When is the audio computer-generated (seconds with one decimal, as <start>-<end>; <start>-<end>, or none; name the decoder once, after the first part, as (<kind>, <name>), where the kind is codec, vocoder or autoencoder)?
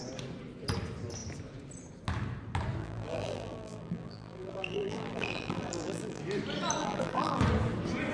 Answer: 2.8-6.2 (vocoder, BigVGAN v2); 6.8-7.4